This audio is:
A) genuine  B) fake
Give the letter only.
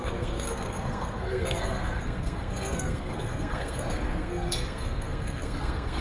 B